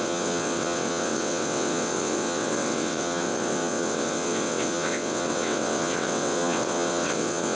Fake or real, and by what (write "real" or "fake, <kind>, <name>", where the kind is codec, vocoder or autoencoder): fake, vocoder, WaveNeXt